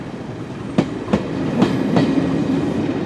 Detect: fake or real real